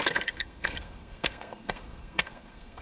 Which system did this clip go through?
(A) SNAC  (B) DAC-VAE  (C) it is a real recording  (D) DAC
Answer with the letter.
A